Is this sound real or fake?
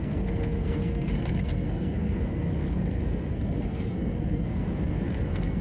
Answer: fake